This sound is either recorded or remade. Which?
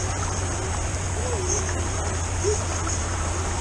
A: recorded